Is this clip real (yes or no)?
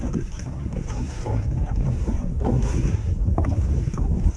no